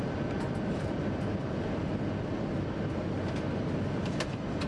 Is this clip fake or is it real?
real